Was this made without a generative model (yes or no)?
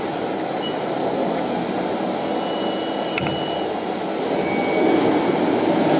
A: yes